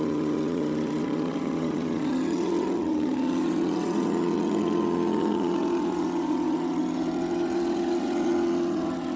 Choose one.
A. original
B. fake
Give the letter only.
B